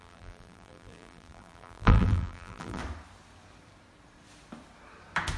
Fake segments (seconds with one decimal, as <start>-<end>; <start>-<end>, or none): 0.0-2.8